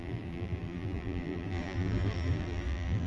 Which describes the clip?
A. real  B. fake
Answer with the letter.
B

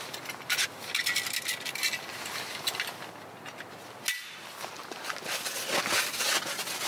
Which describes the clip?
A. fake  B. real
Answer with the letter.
B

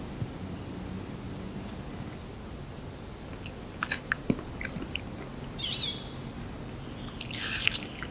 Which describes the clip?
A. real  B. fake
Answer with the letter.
A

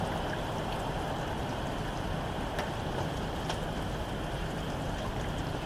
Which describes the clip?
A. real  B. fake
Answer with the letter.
A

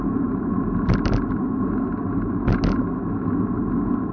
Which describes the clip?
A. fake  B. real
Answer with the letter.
B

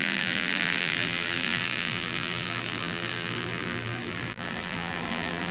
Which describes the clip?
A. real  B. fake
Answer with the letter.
B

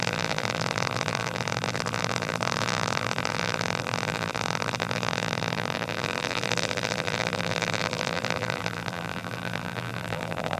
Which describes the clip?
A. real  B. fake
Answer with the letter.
B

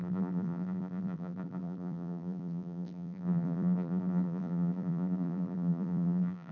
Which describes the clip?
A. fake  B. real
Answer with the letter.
A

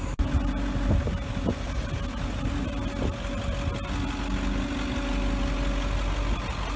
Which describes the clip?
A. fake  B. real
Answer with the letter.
B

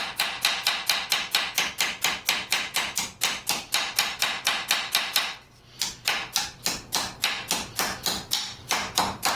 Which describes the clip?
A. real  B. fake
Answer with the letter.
B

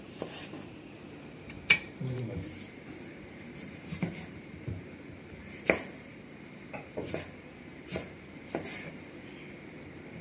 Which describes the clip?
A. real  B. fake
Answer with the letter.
B